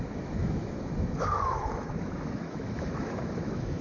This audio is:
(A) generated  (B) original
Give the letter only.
A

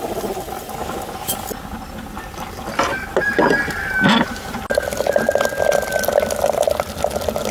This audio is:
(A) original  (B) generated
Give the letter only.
A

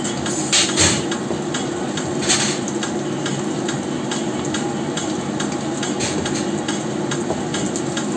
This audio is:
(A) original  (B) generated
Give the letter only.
A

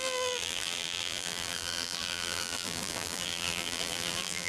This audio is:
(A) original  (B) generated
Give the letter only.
B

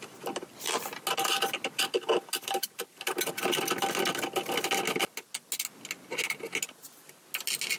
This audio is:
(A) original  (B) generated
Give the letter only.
A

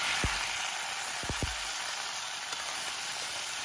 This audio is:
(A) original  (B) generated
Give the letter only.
A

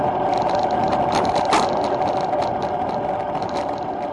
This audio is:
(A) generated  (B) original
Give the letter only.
B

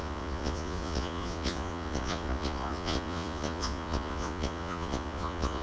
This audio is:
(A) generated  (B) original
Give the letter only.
A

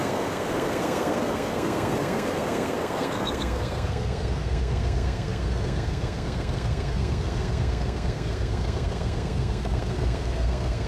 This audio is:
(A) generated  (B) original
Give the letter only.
A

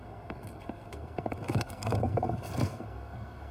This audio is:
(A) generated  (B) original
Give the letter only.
A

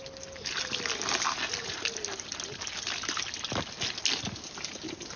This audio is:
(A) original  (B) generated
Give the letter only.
A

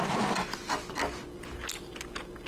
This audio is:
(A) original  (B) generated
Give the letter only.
A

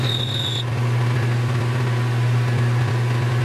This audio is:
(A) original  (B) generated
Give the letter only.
A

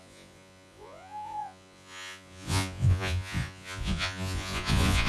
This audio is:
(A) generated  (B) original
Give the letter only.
A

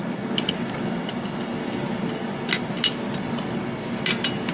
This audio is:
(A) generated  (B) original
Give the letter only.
B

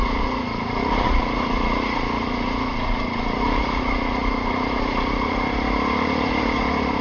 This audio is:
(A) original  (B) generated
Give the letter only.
B